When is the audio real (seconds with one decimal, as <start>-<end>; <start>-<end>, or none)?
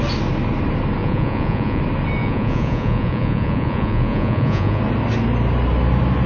0.0-1.0; 1.8-2.2; 4.8-6.3